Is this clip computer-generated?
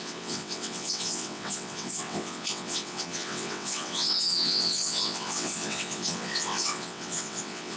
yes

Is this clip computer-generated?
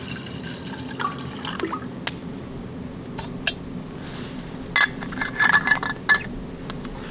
no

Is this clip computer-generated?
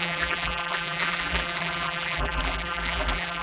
yes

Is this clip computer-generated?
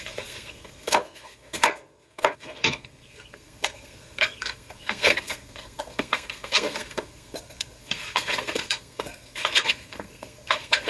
yes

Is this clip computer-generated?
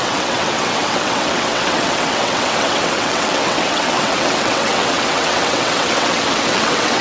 yes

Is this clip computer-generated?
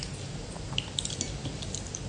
no